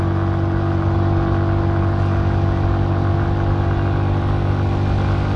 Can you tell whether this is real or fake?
real